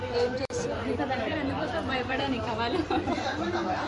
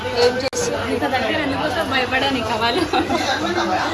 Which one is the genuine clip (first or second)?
second